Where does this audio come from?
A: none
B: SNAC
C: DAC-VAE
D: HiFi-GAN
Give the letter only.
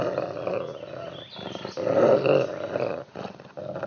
A